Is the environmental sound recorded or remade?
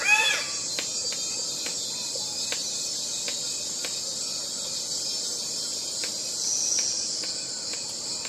recorded